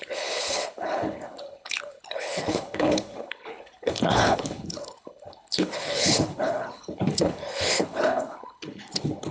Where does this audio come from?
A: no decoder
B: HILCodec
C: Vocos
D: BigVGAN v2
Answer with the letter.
B